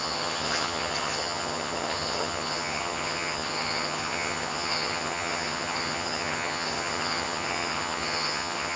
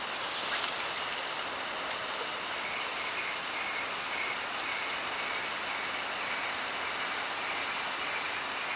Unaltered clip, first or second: second